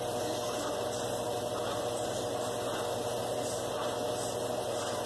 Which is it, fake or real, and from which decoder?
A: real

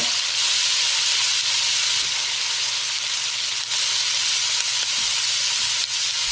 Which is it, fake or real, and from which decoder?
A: real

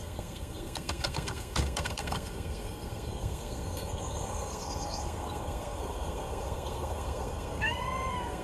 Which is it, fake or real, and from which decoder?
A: fake, codec, SNAC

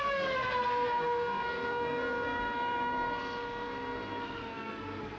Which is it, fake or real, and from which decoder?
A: fake, codec, SNAC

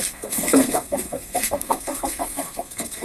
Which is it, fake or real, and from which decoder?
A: fake, codec, SNAC